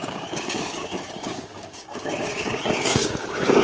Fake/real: fake